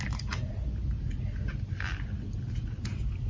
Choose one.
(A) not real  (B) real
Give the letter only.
B